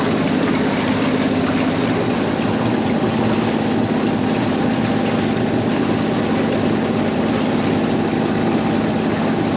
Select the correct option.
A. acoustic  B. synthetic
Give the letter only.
A